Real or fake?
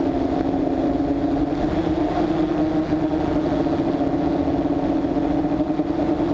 real